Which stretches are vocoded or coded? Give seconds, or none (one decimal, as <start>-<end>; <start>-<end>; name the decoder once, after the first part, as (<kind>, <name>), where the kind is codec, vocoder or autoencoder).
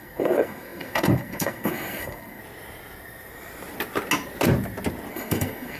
0.0-2.4 (codec, SNAC); 5.1-5.8